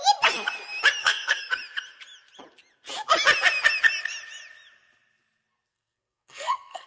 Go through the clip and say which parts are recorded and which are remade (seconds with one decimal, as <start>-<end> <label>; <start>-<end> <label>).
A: 0.0-1.0 recorded; 1.0-1.5 remade; 1.5-5.7 recorded; 5.7-6.9 remade